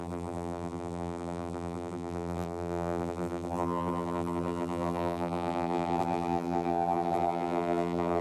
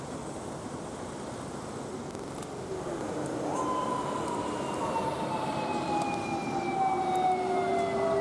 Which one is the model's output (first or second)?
first